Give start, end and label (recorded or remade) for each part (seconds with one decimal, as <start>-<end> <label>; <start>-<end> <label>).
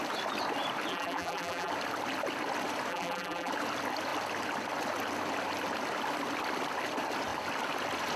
0.0-0.9 recorded; 0.9-1.7 remade; 1.7-2.9 recorded; 2.9-3.5 remade; 3.5-8.2 recorded